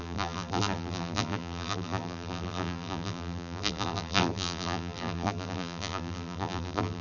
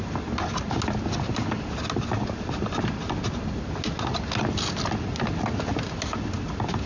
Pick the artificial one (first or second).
first